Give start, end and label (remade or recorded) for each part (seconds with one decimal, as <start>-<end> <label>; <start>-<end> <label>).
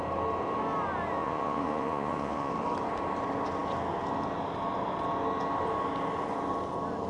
0.0-1.2 recorded; 1.2-2.5 remade; 2.5-7.1 recorded